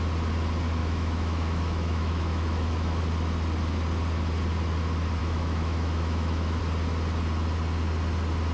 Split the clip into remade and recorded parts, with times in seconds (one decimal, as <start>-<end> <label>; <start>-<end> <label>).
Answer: 0.0-0.8 recorded; 0.8-3.0 remade; 3.0-5.2 recorded; 5.2-6.6 remade; 6.6-8.5 recorded

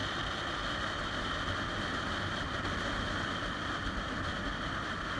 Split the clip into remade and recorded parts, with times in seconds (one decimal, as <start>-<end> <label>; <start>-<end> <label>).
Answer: 0.0-5.2 recorded

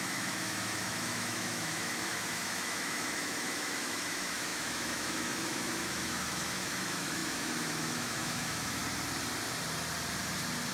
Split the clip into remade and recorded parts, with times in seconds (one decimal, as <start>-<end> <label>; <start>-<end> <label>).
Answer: 0.0-8.8 remade; 8.8-10.7 recorded

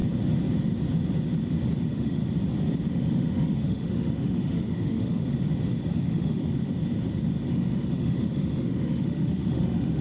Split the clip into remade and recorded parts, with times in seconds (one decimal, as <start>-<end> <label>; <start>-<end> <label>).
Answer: 0.0-1.8 recorded; 1.8-2.2 remade; 2.2-2.9 recorded; 2.9-5.2 remade; 5.2-5.9 recorded; 5.9-6.4 remade; 6.4-7.5 recorded; 7.5-10.0 remade

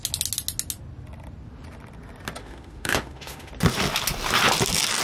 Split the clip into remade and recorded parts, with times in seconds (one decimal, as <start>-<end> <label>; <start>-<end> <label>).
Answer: 0.0-2.4 recorded; 2.4-3.5 remade; 3.5-5.0 recorded

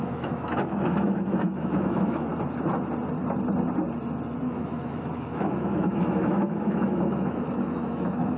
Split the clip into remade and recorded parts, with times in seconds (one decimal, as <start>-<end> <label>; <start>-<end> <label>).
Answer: 0.0-2.3 remade; 2.3-4.4 recorded; 4.4-8.4 remade